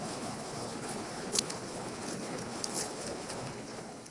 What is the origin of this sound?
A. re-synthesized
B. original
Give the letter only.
A